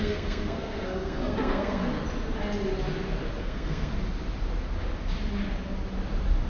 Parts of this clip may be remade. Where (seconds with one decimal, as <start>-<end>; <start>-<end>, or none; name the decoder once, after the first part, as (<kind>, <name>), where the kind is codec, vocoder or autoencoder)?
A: 0.0-1.8 (codec, SNAC); 3.4-3.9